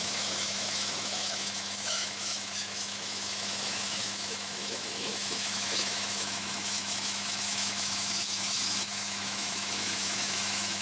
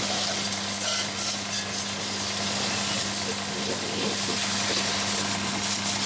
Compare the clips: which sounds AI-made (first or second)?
first